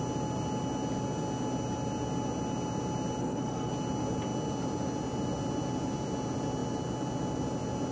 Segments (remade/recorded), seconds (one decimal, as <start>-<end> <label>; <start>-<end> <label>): 0.0-3.2 recorded; 3.2-3.7 remade; 3.7-7.9 recorded